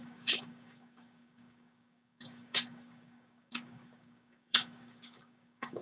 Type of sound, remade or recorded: remade